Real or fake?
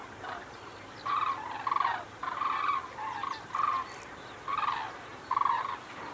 real